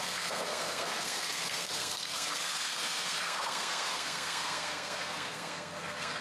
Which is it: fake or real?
fake